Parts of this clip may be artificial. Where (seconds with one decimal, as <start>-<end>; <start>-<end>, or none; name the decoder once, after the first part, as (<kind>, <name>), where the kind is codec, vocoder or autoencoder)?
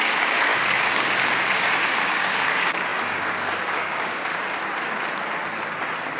0.0-4.3 (codec, DAC)